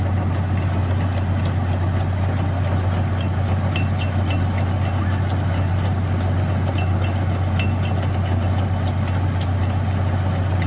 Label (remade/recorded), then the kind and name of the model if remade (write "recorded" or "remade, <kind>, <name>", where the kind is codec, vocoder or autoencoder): recorded